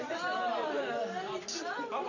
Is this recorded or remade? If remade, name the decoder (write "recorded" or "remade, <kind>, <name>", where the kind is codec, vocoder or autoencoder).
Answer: remade, vocoder, BigVGAN v2